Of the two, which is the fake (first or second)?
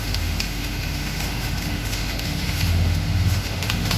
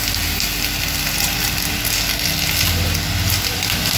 first